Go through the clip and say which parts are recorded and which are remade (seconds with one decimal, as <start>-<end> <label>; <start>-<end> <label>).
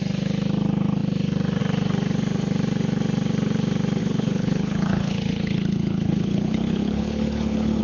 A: 0.0-4.0 recorded; 4.0-7.8 remade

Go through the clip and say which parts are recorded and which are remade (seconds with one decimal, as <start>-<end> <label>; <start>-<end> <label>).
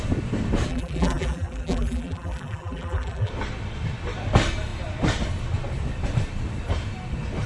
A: 0.0-0.7 recorded; 0.7-3.3 remade; 3.3-7.5 recorded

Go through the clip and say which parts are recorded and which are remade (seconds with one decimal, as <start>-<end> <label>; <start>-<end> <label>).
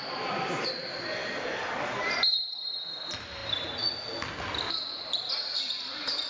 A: 0.0-6.3 recorded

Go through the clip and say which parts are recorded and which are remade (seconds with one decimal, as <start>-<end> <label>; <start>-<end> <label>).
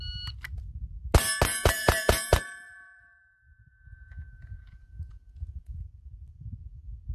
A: 0.0-1.5 recorded; 1.5-5.8 remade; 5.8-7.1 recorded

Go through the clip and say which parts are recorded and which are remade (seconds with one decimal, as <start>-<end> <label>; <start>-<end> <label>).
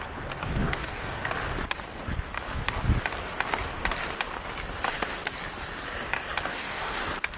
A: 0.0-0.6 recorded; 0.6-1.3 remade; 1.3-6.5 recorded; 6.5-7.0 remade; 7.0-7.4 recorded